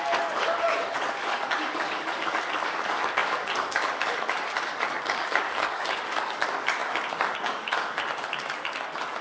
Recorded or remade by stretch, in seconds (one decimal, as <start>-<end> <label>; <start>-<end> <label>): 0.0-9.2 remade

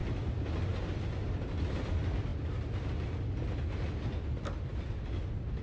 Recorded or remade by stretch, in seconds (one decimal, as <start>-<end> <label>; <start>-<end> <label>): 0.0-5.6 recorded

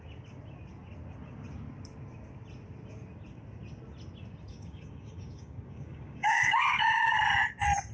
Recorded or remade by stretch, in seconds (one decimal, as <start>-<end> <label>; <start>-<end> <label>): 0.0-4.5 recorded; 4.5-7.2 remade; 7.2-7.9 recorded

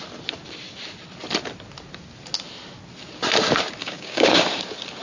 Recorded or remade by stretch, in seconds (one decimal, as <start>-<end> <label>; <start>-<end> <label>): 0.0-3.8 recorded; 3.8-4.4 remade; 4.4-5.0 recorded

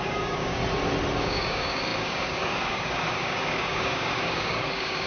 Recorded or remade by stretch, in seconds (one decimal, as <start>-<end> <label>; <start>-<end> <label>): 0.0-0.6 remade; 0.6-1.2 recorded; 1.2-5.1 remade

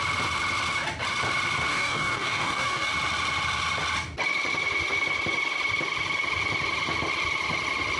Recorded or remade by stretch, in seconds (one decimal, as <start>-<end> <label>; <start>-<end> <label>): 0.0-1.7 recorded; 1.7-2.9 remade; 2.9-8.0 recorded

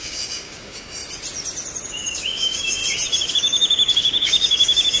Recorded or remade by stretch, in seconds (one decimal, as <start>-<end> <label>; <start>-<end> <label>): 0.0-1.0 remade; 1.0-1.9 recorded; 1.9-2.8 remade; 2.8-3.3 recorded; 3.3-5.0 remade